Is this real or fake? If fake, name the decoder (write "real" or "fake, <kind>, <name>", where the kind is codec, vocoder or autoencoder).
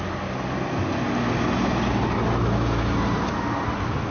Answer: real